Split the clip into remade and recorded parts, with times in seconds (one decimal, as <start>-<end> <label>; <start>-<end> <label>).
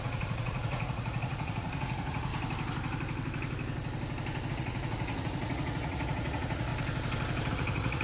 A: 0.0-2.3 remade; 2.3-4.5 recorded; 4.5-6.7 remade; 6.7-7.5 recorded; 7.5-8.0 remade